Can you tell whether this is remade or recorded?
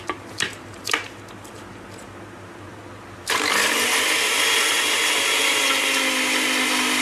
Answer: recorded